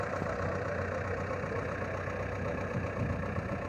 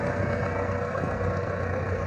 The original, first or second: first